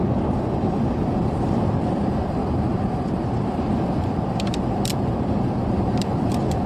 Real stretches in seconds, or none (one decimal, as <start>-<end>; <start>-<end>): 2.4-3.6